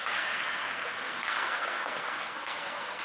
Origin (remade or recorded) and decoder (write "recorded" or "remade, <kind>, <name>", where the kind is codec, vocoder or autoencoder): remade, codec, SNAC